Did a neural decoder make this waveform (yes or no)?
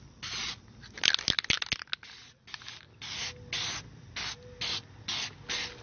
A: no